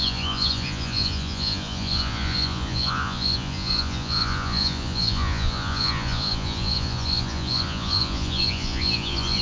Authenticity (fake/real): fake